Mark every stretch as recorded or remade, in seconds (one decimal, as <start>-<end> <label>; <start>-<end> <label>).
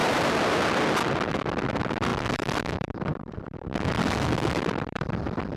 0.0-2.1 recorded; 2.1-5.6 remade